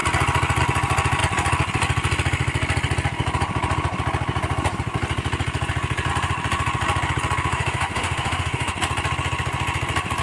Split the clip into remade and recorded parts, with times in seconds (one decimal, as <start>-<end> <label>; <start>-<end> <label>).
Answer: 0.0-7.5 recorded; 7.5-8.7 remade; 8.7-10.2 recorded